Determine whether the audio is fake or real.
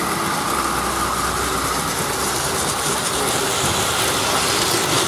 real